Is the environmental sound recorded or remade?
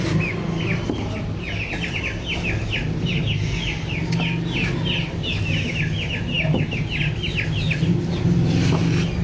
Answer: recorded